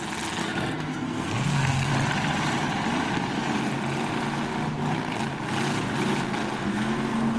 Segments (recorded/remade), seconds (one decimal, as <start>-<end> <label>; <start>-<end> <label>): 0.0-0.4 recorded; 0.4-1.9 remade; 1.9-6.7 recorded; 6.7-7.4 remade